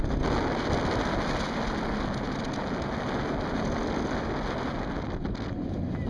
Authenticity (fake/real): real